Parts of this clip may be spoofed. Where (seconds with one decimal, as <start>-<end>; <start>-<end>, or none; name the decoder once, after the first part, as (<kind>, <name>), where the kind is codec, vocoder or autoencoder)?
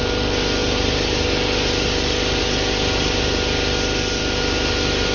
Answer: none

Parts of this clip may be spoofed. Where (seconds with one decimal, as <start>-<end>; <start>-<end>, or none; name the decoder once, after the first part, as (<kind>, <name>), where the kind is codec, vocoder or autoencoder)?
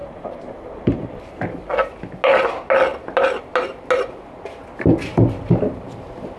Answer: 0.0-1.7 (vocoder, BigVGAN v2)